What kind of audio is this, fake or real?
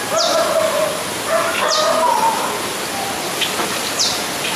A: real